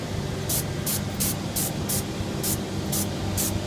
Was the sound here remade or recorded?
recorded